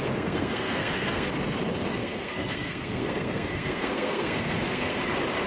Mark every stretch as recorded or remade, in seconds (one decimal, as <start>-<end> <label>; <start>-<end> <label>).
0.0-1.3 remade; 1.3-2.0 recorded; 2.0-5.0 remade; 5.0-5.5 recorded